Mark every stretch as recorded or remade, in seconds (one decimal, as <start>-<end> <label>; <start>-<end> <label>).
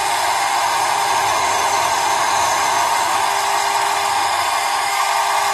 0.0-3.3 remade; 3.3-4.1 recorded; 4.1-4.9 remade; 4.9-5.5 recorded